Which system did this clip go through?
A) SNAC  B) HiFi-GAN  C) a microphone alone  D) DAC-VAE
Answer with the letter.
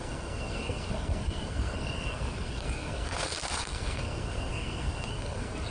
A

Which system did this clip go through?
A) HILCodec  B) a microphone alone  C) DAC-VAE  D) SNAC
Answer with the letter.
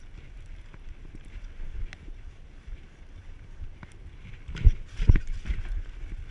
B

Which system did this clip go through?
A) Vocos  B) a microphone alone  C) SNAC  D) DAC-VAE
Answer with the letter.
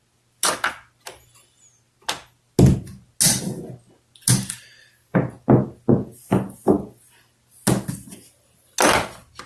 B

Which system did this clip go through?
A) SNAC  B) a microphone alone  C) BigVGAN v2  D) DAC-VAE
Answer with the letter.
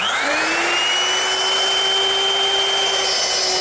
B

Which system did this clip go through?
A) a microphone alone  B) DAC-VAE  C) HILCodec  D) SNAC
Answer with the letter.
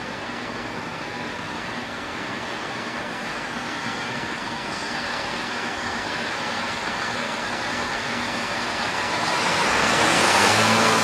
D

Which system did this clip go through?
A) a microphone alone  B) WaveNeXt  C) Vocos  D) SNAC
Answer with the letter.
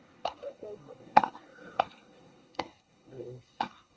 D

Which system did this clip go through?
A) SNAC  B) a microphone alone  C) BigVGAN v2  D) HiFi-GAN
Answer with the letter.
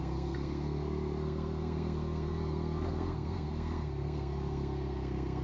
A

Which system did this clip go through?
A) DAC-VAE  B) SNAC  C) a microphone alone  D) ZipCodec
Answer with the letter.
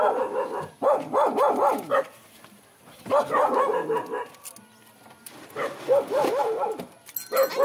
C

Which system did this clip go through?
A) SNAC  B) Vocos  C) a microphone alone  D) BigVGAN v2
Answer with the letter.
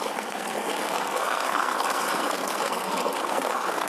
A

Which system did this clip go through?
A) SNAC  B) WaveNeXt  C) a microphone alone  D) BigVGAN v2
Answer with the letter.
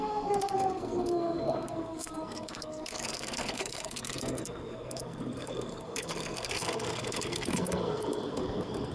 A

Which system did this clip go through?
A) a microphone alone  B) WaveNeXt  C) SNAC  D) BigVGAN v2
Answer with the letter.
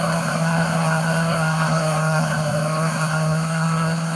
C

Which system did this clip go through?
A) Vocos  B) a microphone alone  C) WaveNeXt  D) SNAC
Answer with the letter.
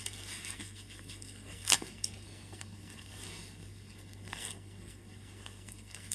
D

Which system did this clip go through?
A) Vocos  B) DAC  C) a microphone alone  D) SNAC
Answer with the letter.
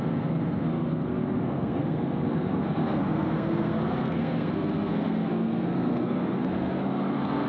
D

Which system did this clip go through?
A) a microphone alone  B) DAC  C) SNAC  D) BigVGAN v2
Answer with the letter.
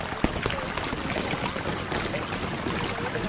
A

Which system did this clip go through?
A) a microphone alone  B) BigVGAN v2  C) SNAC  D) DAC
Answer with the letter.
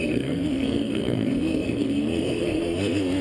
C